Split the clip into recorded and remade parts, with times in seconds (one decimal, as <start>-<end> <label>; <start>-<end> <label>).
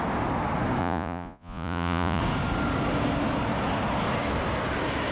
0.0-0.8 recorded; 0.8-2.2 remade; 2.2-5.1 recorded